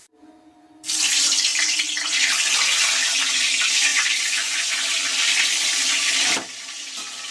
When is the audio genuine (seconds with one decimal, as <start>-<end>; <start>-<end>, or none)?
0.0-3.9; 4.9-7.3